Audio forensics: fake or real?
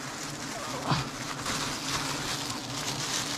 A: real